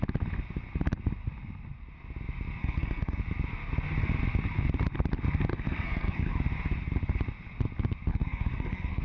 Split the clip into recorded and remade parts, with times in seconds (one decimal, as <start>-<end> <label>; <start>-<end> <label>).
0.0-2.6 recorded; 2.6-3.2 remade; 3.2-5.5 recorded; 5.5-6.3 remade; 6.3-8.1 recorded; 8.1-9.0 remade